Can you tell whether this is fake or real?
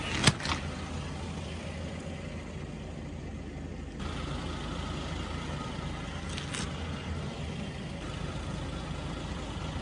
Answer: real